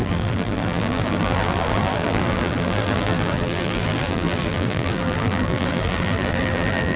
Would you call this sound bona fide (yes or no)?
no